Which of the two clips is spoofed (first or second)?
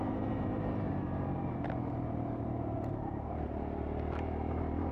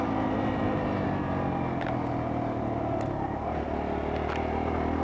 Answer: first